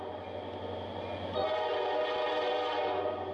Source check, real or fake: real